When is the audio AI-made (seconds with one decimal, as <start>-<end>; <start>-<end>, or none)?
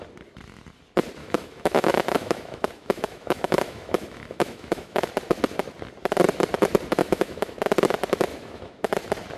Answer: 1.2-5.1; 7.0-7.6; 8.3-8.9